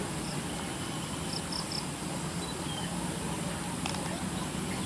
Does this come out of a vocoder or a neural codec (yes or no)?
no